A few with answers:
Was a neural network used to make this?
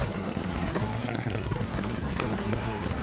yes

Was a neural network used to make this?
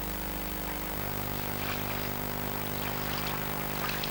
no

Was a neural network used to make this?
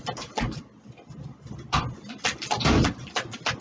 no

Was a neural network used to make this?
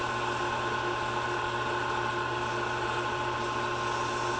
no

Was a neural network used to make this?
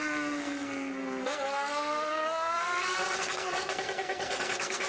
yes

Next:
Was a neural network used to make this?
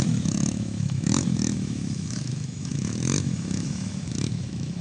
yes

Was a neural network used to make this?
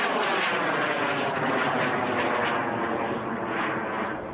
no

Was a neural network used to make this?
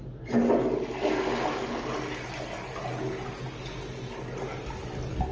no